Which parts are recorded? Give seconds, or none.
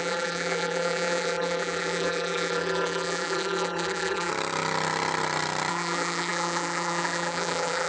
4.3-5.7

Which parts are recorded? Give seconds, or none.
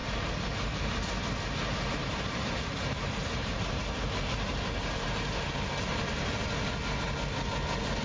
1.0-2.0; 5.5-8.0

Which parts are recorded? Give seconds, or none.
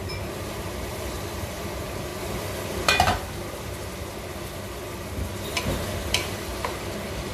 0.0-0.9; 2.1-5.6; 6.5-7.3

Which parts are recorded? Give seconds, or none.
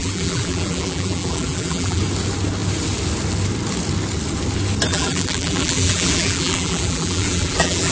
2.0-4.9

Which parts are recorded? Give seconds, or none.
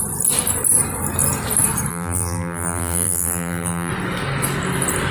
0.0-1.9; 3.9-5.1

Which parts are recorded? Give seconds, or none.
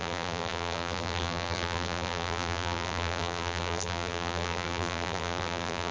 none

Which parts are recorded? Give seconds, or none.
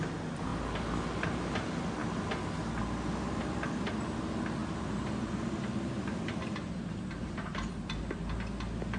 0.0-4.6; 5.3-7.2; 8.0-9.0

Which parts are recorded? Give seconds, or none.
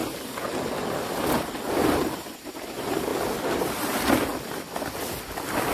0.0-5.7